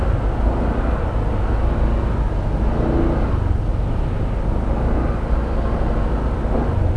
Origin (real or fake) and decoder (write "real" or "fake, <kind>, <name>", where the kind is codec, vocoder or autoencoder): real